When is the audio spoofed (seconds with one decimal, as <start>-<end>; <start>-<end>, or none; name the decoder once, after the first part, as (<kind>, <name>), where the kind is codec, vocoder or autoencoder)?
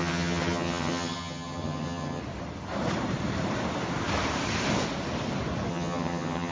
0.0-2.2 (vocoder, HiFi-GAN); 5.7-6.5